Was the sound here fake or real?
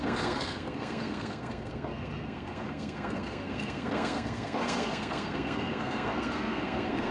fake